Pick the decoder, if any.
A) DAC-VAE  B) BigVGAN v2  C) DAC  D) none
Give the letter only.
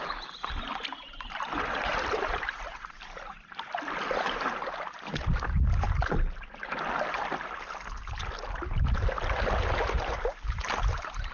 D